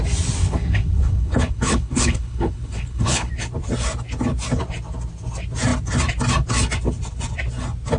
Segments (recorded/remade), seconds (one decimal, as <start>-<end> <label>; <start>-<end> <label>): 0.0-0.4 recorded; 0.4-3.3 remade; 3.3-8.0 recorded